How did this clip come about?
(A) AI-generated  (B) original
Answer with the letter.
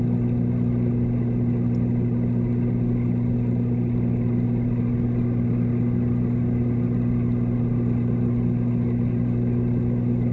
B